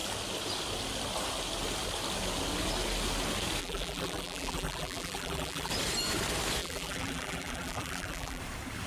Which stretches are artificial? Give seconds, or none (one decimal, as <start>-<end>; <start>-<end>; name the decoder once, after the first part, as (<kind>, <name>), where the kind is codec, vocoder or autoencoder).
3.6-5.7 (vocoder, BigVGAN v2); 6.6-8.4